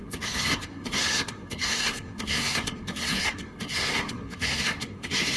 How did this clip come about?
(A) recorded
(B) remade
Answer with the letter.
B